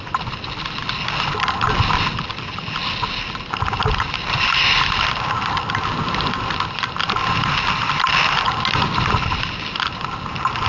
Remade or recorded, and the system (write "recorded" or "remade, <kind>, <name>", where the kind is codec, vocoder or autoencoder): recorded